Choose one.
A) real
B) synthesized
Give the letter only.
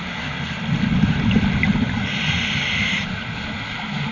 A